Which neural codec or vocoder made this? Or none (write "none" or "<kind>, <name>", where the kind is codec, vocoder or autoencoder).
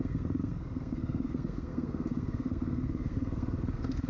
codec, SNAC